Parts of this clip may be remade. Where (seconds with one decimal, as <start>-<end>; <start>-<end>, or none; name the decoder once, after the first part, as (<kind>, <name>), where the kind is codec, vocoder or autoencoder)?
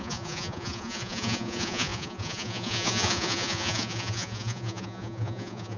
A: 0.0-5.8 (vocoder, Vocos)